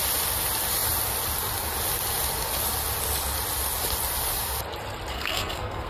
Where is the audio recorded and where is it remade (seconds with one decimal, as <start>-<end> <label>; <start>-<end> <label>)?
0.0-5.1 recorded; 5.1-5.9 remade